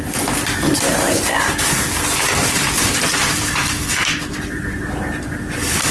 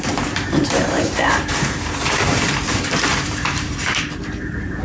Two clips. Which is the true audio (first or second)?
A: first